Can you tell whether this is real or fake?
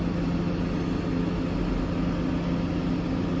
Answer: real